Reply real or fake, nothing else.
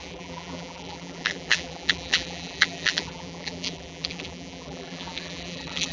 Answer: fake